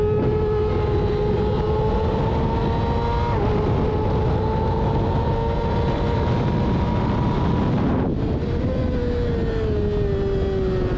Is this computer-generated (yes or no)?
no